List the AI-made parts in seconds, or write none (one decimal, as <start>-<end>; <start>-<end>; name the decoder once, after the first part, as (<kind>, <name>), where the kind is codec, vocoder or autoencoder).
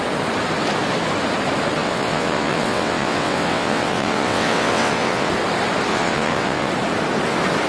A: 1.8-5.3 (vocoder, WaveNeXt); 5.9-6.7